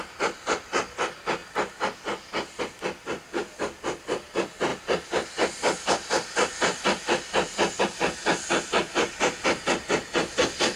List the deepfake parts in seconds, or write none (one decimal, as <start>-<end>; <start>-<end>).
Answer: none